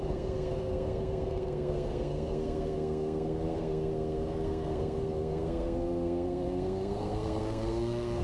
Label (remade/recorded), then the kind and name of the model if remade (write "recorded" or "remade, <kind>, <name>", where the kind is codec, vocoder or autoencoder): remade, codec, SNAC